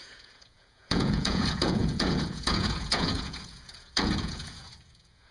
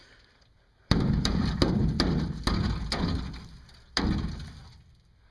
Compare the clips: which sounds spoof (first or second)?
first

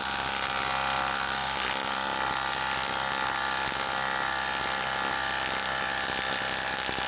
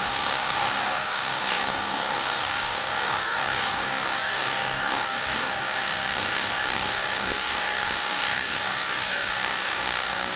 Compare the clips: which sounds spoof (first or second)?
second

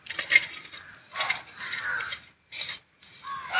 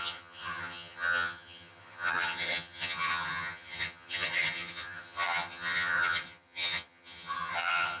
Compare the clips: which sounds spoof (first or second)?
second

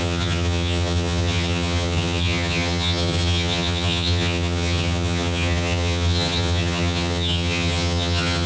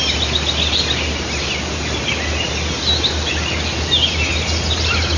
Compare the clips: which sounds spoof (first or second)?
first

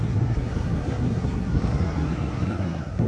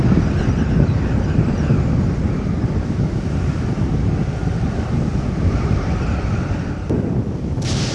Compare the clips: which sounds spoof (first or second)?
first